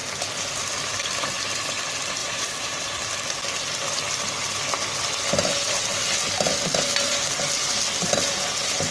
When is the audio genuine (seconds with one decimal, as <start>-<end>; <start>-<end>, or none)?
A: 0.0-2.2; 2.8-8.9